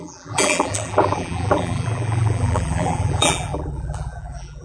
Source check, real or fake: fake